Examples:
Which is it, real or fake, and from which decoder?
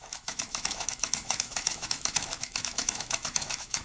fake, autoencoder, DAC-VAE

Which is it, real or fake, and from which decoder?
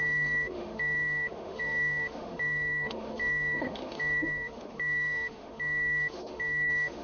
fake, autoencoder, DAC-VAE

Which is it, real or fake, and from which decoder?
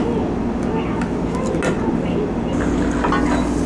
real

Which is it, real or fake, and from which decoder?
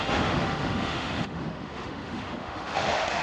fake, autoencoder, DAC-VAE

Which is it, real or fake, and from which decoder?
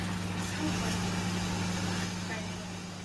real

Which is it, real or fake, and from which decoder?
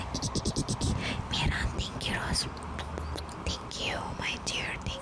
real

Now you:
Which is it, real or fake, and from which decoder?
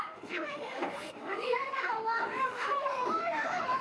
fake, autoencoder, DAC-VAE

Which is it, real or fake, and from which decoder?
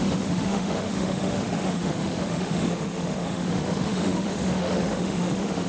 fake, autoencoder, DAC-VAE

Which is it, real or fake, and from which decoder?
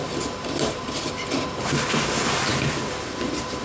real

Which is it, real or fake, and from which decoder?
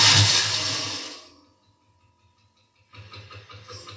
real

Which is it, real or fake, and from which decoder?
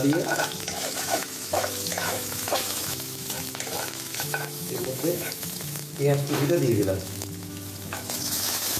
fake, autoencoder, DAC-VAE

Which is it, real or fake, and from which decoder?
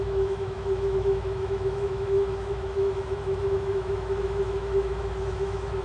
fake, autoencoder, DAC-VAE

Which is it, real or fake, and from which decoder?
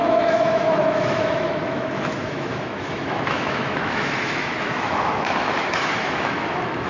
fake, autoencoder, DAC-VAE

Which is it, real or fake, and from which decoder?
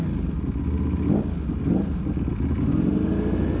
real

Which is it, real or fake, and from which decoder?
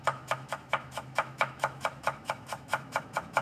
fake, autoencoder, DAC-VAE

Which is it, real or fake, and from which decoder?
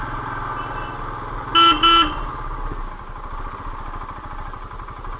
real